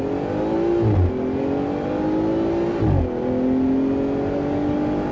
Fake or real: real